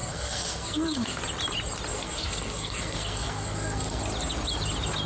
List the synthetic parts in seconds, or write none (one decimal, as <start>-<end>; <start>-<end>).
0.0-1.2; 1.9-4.0